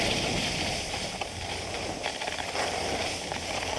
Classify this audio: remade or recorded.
recorded